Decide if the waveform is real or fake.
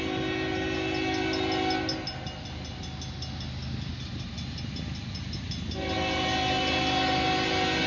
real